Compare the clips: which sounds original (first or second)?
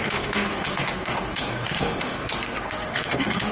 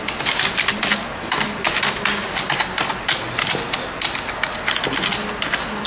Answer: second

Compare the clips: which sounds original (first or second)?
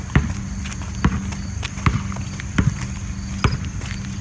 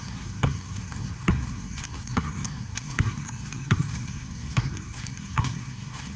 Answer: first